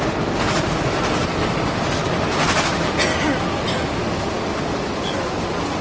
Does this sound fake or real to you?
real